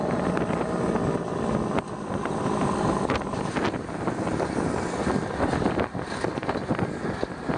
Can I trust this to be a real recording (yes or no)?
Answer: yes